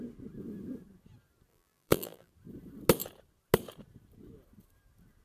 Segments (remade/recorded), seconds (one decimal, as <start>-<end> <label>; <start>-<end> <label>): 0.0-1.5 recorded; 1.5-2.3 remade; 2.3-5.2 recorded